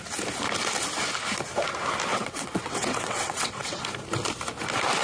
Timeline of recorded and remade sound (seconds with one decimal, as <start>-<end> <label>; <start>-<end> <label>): 0.0-2.1 recorded; 2.1-3.8 remade; 3.8-5.0 recorded